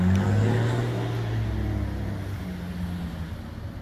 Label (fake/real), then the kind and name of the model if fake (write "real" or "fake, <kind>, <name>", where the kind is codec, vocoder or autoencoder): real